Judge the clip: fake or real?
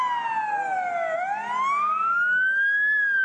real